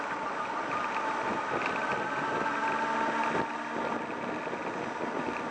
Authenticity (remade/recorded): recorded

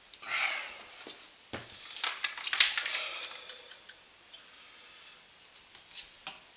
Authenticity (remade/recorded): recorded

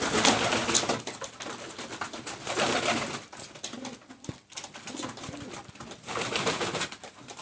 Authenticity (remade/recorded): recorded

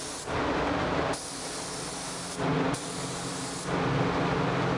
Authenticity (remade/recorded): recorded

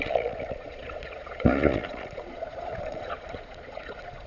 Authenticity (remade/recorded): remade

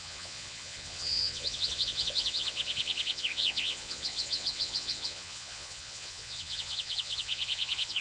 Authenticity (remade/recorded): remade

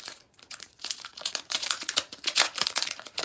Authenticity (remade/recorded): remade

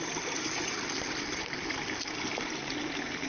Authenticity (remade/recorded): recorded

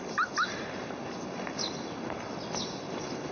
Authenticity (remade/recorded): recorded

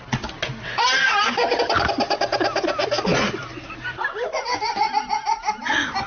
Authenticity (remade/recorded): recorded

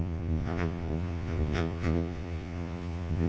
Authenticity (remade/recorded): remade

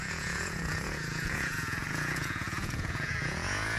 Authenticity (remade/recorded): remade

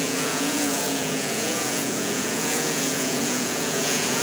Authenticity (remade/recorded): remade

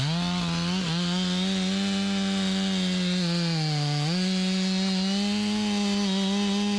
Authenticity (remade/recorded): recorded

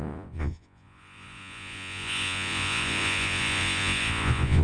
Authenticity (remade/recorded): remade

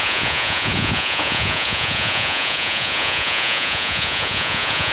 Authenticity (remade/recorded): remade